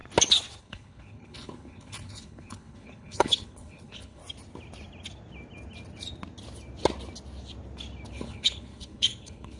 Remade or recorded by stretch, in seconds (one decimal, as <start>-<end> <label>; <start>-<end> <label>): 0.0-0.6 recorded; 0.6-4.2 remade; 4.2-8.1 recorded; 8.1-9.6 remade